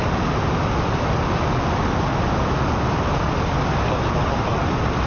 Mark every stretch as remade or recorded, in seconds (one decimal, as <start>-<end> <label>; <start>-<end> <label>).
0.0-5.1 recorded